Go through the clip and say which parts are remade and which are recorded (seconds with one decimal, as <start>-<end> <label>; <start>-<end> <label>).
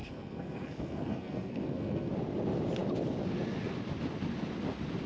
0.0-2.1 remade; 2.1-5.1 recorded